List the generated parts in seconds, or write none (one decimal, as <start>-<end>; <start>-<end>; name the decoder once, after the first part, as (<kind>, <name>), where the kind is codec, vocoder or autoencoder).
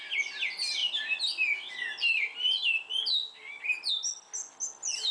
none